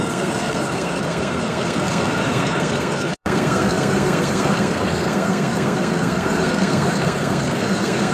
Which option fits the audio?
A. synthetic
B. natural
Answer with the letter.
A